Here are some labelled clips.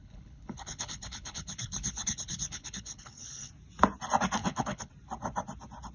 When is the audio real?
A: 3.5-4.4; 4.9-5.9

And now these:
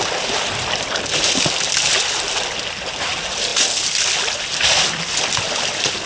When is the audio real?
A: 0.0-6.1

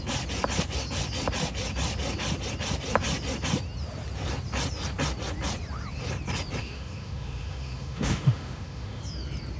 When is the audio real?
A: 0.0-6.6; 9.0-9.6